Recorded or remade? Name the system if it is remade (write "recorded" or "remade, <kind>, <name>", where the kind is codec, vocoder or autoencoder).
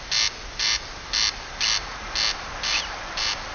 recorded